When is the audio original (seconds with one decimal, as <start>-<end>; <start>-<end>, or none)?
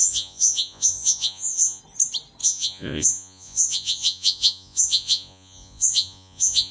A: 1.8-2.4